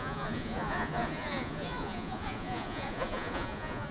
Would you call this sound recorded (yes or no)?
no